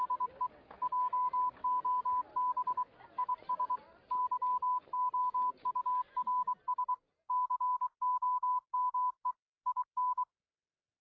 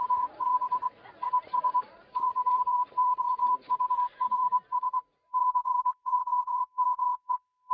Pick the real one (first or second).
first